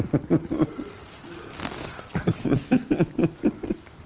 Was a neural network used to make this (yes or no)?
no